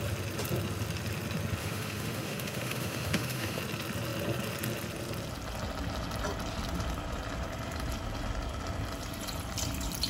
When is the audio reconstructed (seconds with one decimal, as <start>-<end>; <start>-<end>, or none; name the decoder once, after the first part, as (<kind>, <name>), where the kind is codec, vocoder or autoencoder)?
1.6-3.6 (autoencoder, DAC-VAE)